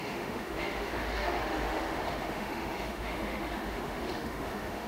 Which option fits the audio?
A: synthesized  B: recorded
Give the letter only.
A